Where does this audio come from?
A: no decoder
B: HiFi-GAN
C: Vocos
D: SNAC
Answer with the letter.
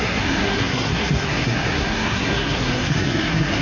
D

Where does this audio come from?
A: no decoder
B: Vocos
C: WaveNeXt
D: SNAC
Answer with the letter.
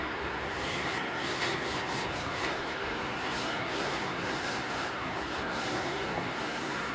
D